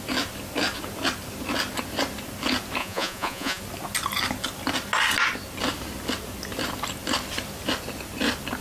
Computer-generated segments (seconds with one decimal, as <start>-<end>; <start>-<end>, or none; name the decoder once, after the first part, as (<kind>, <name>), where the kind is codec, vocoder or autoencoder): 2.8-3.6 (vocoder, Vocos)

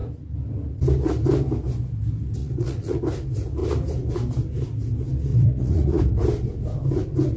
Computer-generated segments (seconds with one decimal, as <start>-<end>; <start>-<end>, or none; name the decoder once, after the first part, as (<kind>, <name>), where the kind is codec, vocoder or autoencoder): 2.4-3.0 (vocoder, Vocos); 5.3-6.0

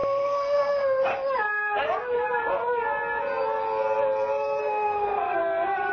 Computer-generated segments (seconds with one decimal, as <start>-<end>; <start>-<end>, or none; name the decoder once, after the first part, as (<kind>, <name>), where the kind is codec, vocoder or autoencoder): 0.0-1.1 (codec, SNAC); 4.6-5.4

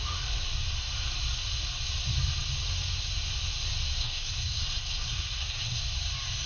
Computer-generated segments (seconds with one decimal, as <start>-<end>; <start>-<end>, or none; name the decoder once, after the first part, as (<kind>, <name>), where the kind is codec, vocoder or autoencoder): 4.0-5.8 (codec, SNAC)